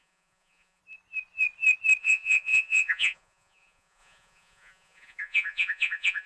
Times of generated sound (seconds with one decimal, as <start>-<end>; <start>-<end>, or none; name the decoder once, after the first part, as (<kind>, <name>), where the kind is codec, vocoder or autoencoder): 0.0-0.8 (vocoder, Vocos); 2.0-6.3